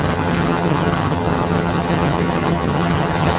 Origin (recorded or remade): remade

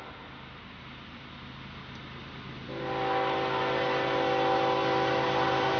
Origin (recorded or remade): recorded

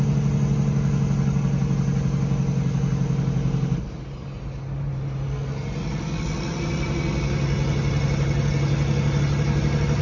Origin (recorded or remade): recorded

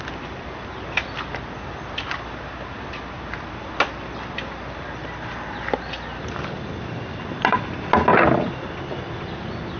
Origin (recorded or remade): recorded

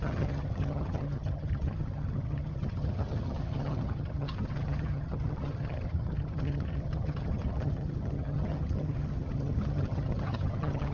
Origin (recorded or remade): remade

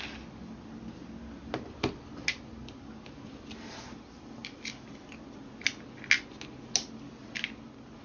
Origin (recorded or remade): recorded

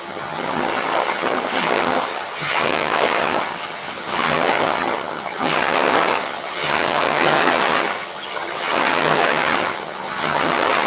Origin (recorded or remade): remade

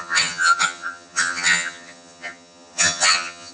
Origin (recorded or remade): remade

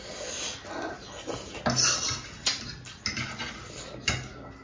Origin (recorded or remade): recorded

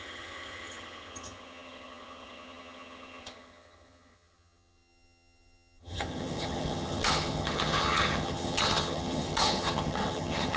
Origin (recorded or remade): remade